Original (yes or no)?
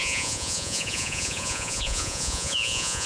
no